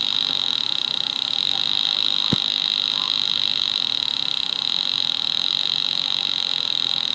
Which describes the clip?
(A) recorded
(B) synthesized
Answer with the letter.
B